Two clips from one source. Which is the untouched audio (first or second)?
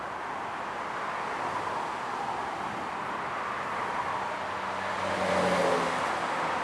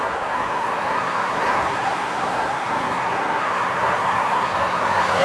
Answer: first